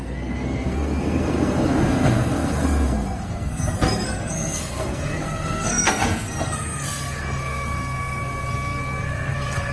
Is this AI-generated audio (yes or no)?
yes